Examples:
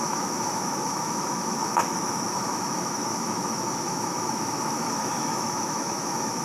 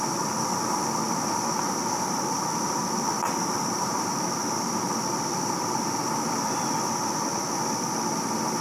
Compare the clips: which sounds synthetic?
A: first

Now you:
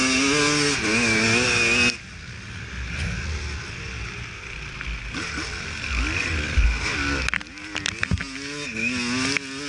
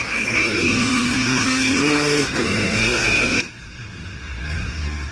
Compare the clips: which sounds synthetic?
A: second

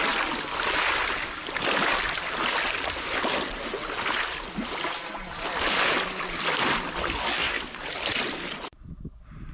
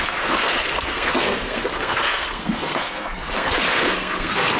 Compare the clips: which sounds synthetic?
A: second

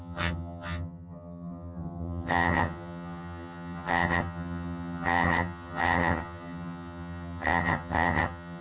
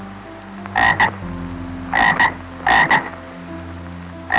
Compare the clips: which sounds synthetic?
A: first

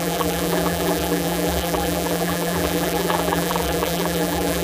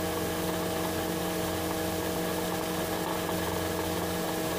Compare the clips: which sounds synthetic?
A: first